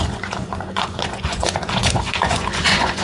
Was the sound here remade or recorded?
remade